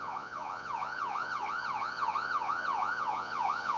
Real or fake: fake